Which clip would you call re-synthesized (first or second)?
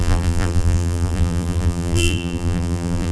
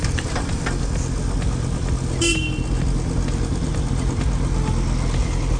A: first